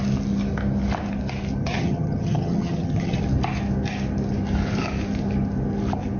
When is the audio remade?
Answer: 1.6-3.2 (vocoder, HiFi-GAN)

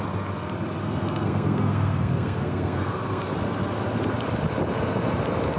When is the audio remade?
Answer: 0.8-3.2 (codec, SNAC)